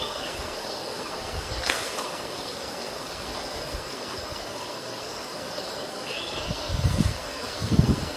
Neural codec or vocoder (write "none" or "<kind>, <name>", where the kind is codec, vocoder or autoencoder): codec, SNAC